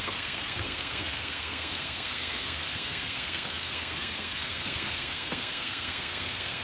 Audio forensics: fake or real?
fake